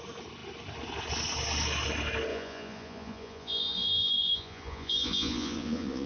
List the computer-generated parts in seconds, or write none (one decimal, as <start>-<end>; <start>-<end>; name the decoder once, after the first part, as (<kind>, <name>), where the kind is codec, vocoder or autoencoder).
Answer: 2.3-6.1 (vocoder, Vocos)